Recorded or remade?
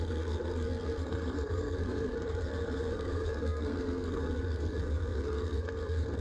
remade